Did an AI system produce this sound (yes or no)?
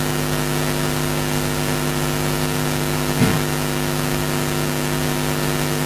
no